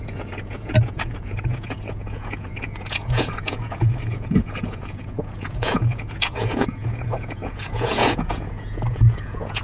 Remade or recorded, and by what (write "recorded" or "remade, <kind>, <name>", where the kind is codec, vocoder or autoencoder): remade, vocoder, Vocos